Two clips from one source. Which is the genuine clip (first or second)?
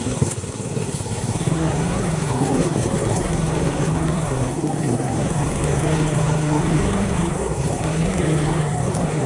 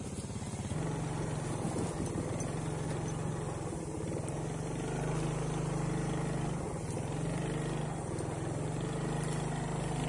second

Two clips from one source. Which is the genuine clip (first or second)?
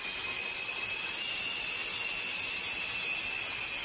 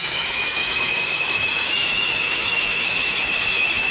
first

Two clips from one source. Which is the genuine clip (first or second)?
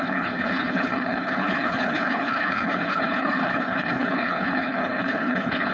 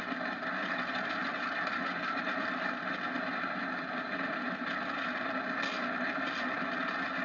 second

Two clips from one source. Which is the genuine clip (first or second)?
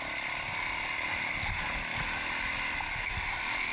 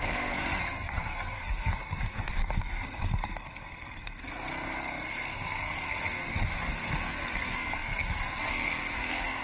first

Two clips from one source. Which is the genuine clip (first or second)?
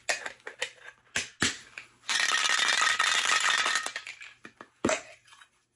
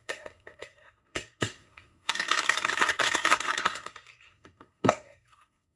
first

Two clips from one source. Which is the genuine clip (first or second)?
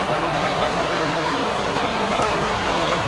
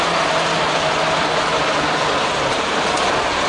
second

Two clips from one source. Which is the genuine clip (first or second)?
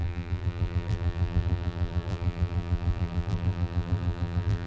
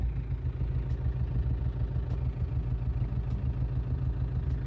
second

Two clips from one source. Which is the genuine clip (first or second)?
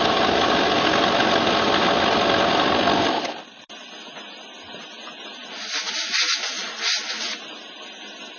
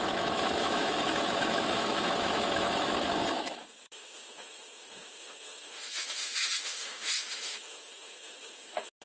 first